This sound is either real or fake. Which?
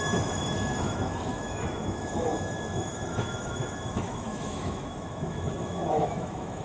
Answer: fake